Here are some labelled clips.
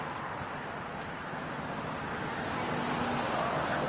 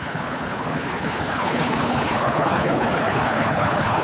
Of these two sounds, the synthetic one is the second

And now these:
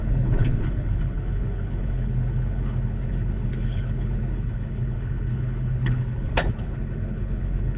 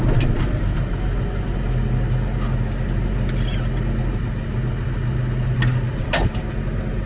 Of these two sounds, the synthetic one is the first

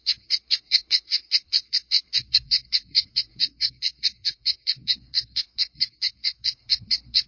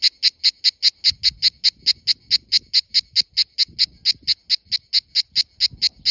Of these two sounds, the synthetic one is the first